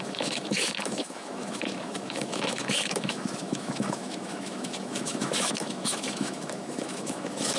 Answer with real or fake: fake